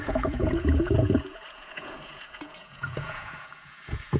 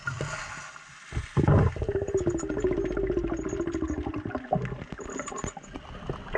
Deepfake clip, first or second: first